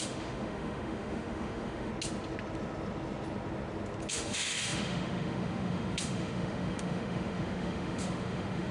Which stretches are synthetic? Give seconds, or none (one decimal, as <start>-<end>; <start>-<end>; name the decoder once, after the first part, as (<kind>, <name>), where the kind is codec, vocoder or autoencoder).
0.0-1.9 (autoencoder, DAC-VAE); 4.1-8.7